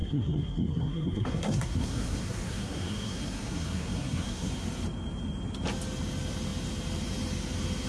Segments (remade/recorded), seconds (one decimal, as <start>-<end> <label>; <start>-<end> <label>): 0.0-4.5 remade; 4.5-7.9 recorded